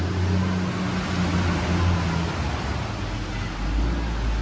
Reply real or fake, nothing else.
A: real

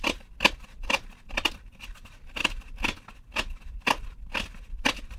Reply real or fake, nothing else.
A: real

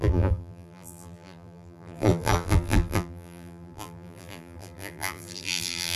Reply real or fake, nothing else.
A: fake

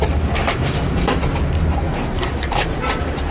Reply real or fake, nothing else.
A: fake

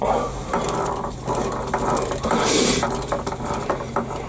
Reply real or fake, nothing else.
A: real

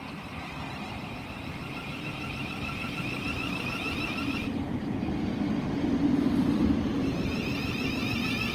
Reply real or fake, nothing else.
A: real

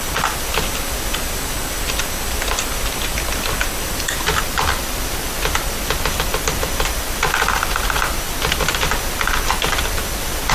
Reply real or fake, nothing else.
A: real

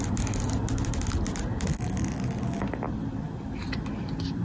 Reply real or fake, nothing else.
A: real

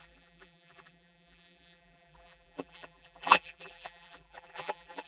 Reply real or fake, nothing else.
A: fake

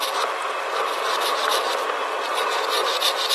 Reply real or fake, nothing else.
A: real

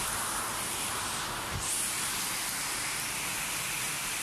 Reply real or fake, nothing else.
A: real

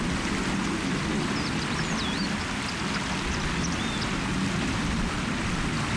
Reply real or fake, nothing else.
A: real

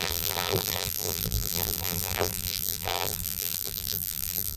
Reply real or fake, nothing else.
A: fake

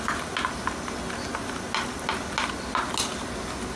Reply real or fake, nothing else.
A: real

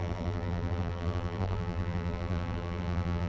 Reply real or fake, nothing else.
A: fake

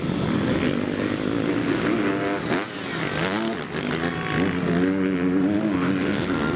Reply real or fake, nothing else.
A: real